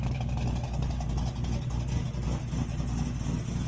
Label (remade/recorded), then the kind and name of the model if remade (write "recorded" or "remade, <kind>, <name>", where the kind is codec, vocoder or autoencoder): recorded